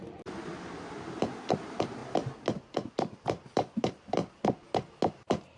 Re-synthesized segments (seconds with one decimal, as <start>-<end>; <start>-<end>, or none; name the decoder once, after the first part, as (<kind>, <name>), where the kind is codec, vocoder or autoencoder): 0.0-0.5 (vocoder, BigVGAN v2); 1.2-2.0; 2.9-4.2; 5.1-5.6